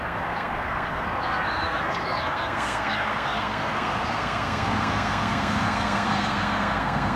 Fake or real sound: fake